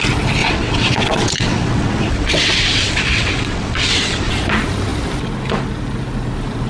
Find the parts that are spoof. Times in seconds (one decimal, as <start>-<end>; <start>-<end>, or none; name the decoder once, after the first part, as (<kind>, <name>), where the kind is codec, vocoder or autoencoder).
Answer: 0.4-4.3 (vocoder, WaveNeXt)